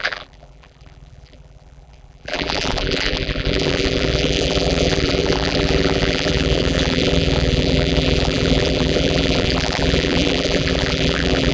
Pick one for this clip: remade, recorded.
remade